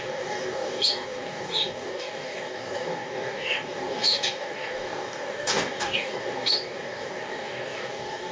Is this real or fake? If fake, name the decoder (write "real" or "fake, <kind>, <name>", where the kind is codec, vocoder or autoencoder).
fake, codec, DAC